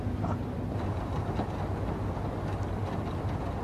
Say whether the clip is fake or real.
real